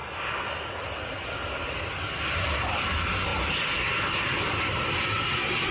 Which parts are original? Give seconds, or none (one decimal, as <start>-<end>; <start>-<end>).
0.0-5.7